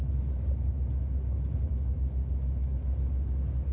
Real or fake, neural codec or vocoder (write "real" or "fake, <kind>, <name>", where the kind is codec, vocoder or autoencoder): real